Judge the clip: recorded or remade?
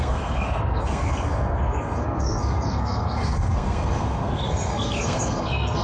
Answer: remade